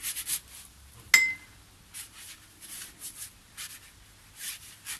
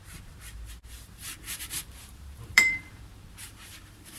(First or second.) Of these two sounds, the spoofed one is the second